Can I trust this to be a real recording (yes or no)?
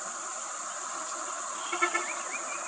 no